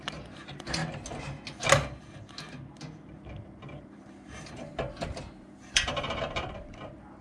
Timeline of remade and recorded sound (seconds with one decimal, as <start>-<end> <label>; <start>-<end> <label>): 0.0-0.8 remade; 0.8-3.6 recorded; 3.6-7.2 remade